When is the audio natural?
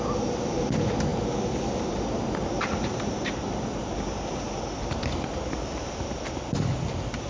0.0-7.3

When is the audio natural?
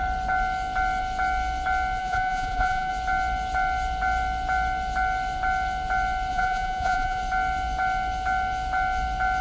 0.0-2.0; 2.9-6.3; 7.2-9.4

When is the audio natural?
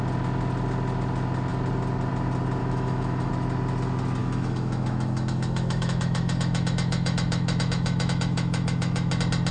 0.0-2.6; 3.3-4.2; 9.1-9.5